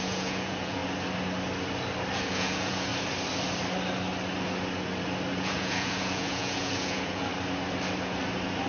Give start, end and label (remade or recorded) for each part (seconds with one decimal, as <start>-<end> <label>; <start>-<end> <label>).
0.0-0.8 remade; 0.8-2.1 recorded; 2.1-2.9 remade; 2.9-5.4 recorded; 5.4-7.3 remade; 7.3-8.7 recorded